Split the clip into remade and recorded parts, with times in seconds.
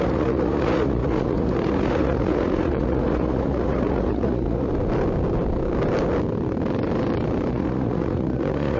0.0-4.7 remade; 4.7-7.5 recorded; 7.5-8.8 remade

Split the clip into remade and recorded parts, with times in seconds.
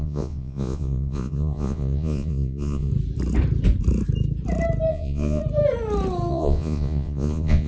0.0-2.9 remade; 2.9-4.9 recorded; 4.9-5.4 remade; 5.4-6.3 recorded; 6.3-7.7 remade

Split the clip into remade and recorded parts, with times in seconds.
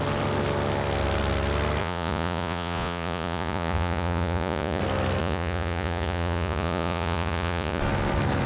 0.0-1.8 recorded; 1.8-4.8 remade; 4.8-5.2 recorded; 5.2-7.8 remade; 7.8-8.5 recorded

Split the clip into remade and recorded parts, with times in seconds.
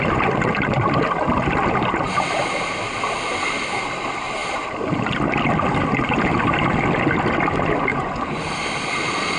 0.0-7.9 recorded; 7.9-8.4 remade; 8.4-9.4 recorded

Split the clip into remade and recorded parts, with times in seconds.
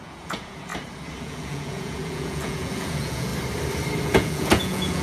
0.0-0.7 remade; 0.7-1.2 recorded; 1.2-3.3 remade; 3.3-4.0 recorded; 4.0-5.0 remade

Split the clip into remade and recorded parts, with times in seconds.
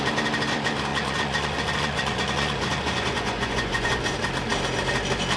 0.0-0.9 recorded; 0.9-4.0 remade; 4.0-5.4 recorded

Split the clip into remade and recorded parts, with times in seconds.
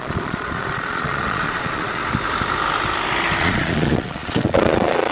0.0-2.0 remade; 2.0-3.4 recorded; 3.4-5.1 remade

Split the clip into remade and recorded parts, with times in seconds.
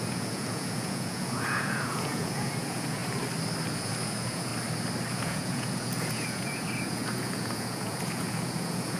0.0-3.0 remade; 3.0-3.7 recorded; 3.7-4.5 remade; 4.5-5.1 recorded; 5.1-9.0 remade